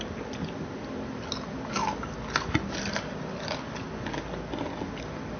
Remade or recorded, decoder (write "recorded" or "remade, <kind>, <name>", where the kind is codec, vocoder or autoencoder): recorded